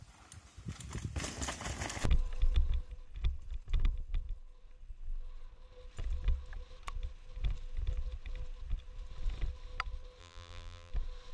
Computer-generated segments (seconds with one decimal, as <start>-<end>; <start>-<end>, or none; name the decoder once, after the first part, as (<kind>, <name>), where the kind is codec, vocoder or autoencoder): 10.2-10.9 (vocoder, BigVGAN v2)